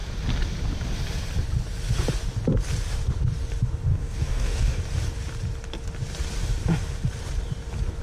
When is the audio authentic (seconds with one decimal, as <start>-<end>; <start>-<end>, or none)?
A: 0.0-3.9; 4.8-8.0